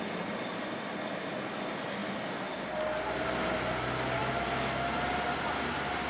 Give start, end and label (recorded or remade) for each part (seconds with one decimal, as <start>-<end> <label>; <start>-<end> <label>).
0.0-6.1 recorded